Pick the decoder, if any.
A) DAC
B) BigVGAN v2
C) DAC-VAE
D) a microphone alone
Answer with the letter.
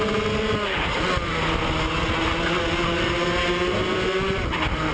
D